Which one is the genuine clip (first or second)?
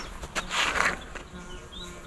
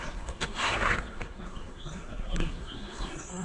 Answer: first